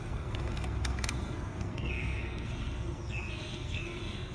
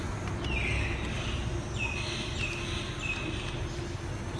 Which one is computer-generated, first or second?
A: first